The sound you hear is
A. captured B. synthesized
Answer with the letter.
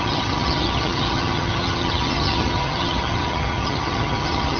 B